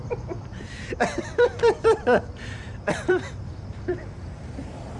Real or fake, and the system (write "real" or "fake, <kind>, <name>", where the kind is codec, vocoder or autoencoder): fake, vocoder, BigVGAN v2